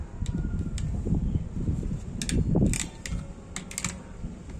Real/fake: real